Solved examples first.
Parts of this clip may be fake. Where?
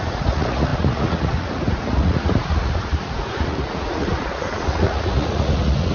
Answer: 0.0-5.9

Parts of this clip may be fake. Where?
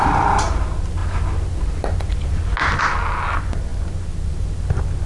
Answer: none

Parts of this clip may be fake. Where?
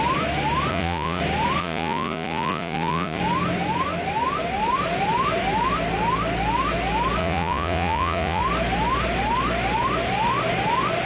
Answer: 0.7-1.2; 1.6-3.2; 7.2-8.4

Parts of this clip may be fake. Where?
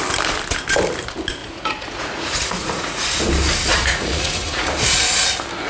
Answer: 1.4-3.2; 3.7-4.6